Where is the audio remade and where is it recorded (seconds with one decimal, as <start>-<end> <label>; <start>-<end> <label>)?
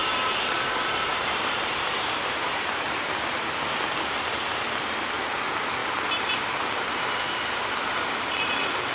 0.0-3.0 remade; 3.0-8.9 recorded